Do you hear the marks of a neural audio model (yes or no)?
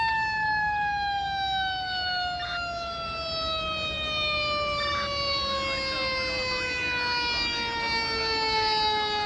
no